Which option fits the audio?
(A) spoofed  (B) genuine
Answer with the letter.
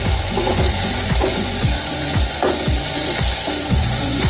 A